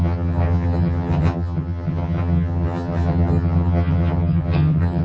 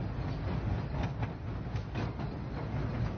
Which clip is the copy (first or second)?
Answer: first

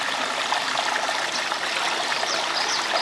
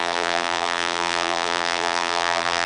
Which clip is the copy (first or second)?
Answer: second